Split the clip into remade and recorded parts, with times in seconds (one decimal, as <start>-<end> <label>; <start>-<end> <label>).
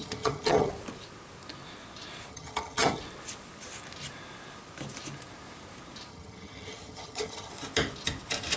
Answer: 0.0-0.7 remade; 0.7-2.3 recorded; 2.3-3.0 remade; 3.0-6.1 recorded; 6.1-7.5 remade; 7.5-8.6 recorded